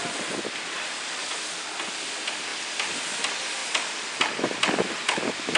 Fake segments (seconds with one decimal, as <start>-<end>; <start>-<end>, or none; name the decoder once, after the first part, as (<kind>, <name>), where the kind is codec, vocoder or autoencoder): 0.0-1.6 (vocoder, BigVGAN v2); 2.5-3.2; 3.6-4.6